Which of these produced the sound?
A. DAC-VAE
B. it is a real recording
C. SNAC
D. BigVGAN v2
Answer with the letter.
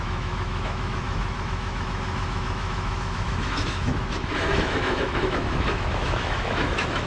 A